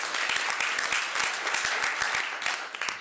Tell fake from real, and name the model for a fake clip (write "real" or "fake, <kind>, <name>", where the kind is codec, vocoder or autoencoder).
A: real